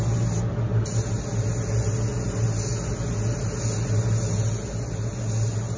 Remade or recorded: recorded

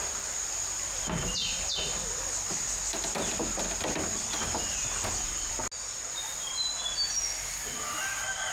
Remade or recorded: recorded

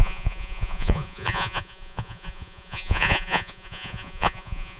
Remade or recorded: remade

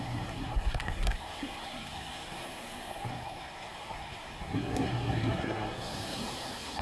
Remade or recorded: remade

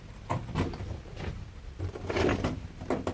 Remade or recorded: remade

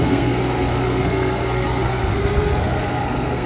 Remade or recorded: remade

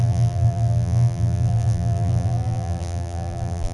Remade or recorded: remade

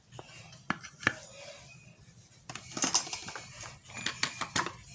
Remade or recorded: recorded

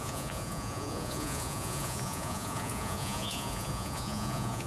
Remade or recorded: remade